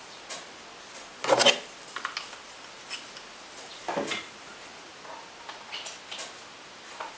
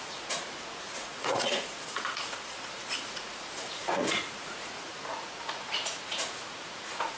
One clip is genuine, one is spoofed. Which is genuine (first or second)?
first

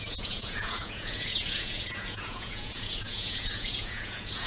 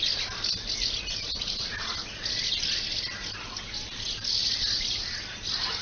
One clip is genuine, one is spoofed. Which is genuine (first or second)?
second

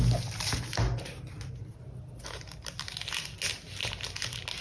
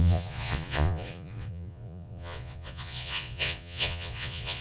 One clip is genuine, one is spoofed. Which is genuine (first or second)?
first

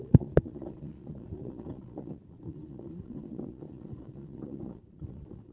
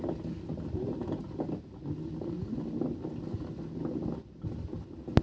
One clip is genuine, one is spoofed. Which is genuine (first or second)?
second